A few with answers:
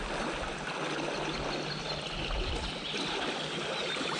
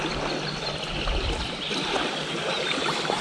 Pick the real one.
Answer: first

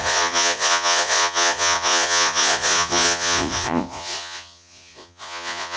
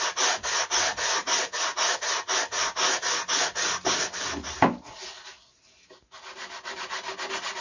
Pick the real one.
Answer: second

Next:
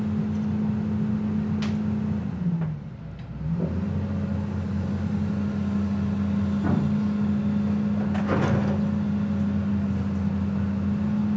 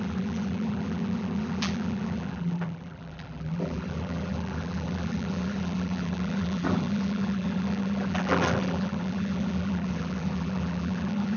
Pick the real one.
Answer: first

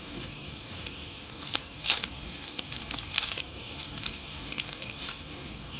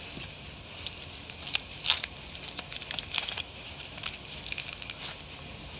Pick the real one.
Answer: second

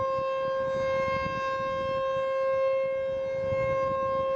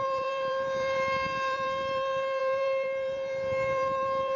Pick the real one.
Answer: first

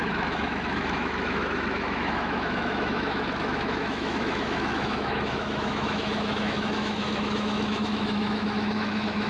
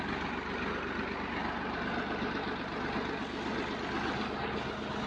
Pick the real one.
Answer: second